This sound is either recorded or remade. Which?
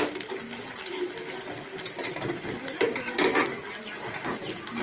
recorded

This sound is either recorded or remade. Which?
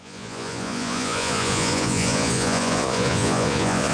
remade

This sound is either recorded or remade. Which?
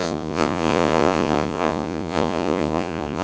remade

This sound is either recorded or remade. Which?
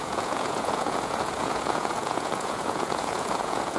remade